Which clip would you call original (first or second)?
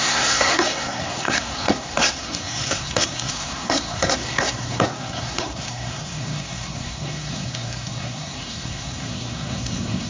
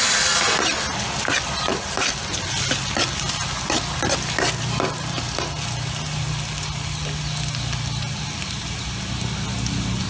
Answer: second